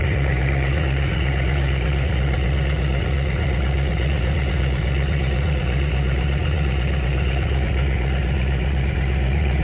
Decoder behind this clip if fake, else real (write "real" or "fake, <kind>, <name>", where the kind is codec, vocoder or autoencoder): fake, vocoder, Vocos